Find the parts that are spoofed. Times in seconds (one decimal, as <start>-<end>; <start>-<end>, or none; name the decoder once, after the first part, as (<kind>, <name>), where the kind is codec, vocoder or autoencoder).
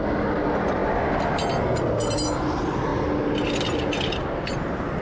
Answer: none